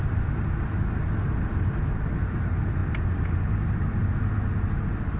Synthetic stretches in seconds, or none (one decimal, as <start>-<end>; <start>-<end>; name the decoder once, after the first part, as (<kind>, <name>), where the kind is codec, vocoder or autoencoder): none